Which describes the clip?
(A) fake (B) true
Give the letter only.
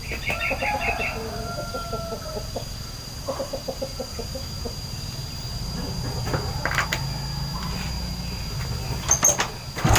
B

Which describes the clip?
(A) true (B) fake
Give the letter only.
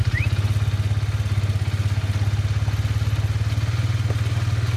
A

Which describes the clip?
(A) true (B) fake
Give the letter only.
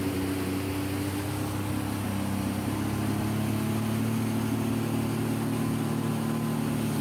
A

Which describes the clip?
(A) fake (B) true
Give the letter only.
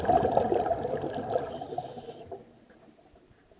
B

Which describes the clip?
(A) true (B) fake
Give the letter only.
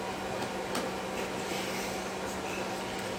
A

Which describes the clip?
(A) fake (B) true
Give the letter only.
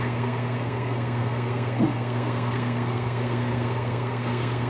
A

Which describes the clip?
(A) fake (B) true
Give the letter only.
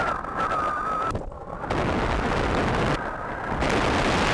B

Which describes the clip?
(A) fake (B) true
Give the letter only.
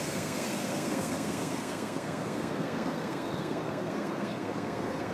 A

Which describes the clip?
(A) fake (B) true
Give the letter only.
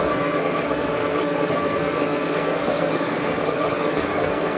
A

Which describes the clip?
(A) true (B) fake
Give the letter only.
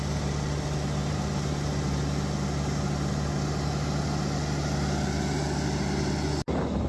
A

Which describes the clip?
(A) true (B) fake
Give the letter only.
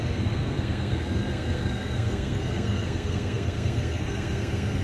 B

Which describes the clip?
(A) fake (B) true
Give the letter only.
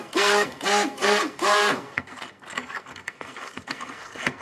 A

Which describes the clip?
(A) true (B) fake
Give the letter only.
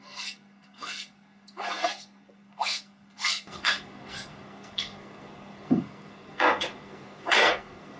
B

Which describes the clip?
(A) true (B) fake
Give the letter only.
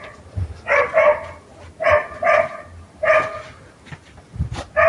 A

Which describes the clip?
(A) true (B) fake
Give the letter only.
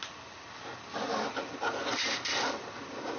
A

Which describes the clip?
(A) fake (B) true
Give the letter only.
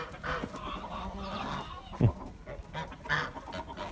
B